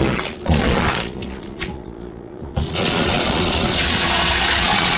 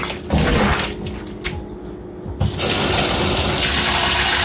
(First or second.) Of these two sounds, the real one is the second